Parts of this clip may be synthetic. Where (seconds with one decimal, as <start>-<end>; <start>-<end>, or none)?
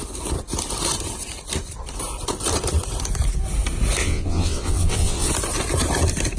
4.0-5.3